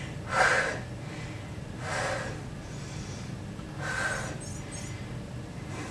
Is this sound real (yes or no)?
yes